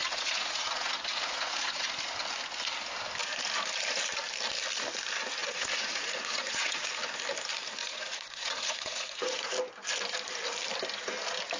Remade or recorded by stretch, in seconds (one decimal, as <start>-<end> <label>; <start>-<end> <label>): 0.0-1.8 remade; 1.8-5.4 recorded; 5.4-6.9 remade; 6.9-7.8 recorded; 7.8-9.5 remade; 9.5-11.6 recorded